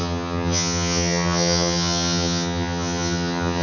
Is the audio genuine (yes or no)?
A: no